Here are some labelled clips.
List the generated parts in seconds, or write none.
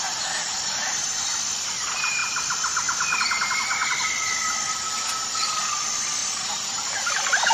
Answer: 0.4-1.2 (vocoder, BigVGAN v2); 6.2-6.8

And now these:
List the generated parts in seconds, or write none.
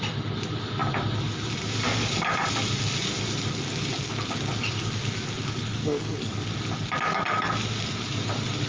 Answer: 5.8-6.3 (codec, SNAC)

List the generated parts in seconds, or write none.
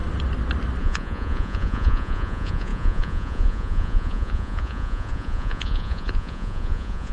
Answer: 0.8-7.1 (vocoder, Vocos)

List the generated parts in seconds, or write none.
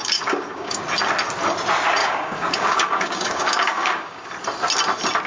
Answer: 0.0-0.8 (codec, DAC); 2.0-4.3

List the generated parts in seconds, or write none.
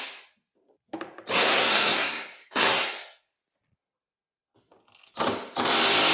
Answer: 1.3-3.3 (codec, SNAC)